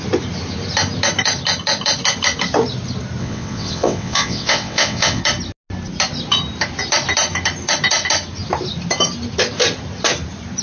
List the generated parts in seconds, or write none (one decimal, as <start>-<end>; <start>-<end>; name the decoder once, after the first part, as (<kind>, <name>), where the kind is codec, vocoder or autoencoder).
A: 3.2-5.2 (vocoder, WaveNeXt)